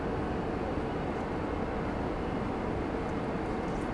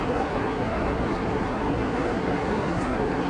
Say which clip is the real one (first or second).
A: first